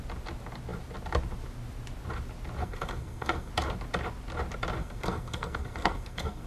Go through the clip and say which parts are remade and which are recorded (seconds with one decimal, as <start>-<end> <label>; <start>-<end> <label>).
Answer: 0.0-2.6 recorded; 2.6-3.5 remade; 3.5-4.8 recorded; 4.8-6.5 remade